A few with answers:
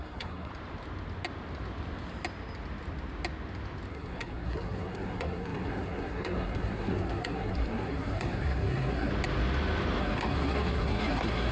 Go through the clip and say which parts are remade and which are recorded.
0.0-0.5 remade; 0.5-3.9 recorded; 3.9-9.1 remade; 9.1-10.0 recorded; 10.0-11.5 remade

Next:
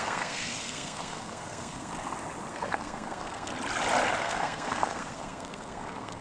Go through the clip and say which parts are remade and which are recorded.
0.0-1.9 remade; 1.9-2.5 recorded; 2.5-3.5 remade; 3.5-4.2 recorded; 4.2-6.2 remade

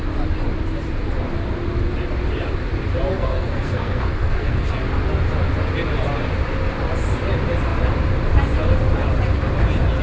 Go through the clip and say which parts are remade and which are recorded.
0.0-3.1 recorded; 3.1-4.7 remade; 4.7-10.0 recorded

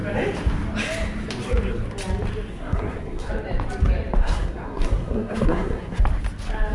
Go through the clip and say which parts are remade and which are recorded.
0.0-2.5 recorded; 2.5-3.3 remade; 3.3-4.2 recorded; 4.2-6.0 remade; 6.0-6.7 recorded

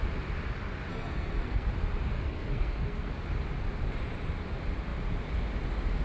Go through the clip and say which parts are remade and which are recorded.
0.0-0.9 recorded; 0.9-1.7 remade; 1.7-2.1 recorded; 2.1-3.1 remade; 3.1-6.0 recorded

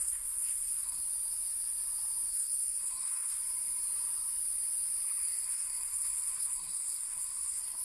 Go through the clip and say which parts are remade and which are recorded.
0.0-1.0 remade; 1.0-2.3 recorded; 2.3-3.4 remade; 3.4-5.2 recorded; 5.2-7.8 remade